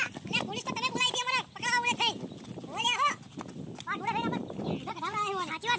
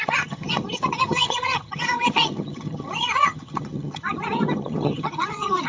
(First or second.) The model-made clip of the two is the second